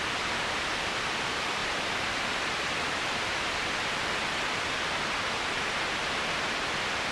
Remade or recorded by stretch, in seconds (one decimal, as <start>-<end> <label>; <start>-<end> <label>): 0.0-7.1 recorded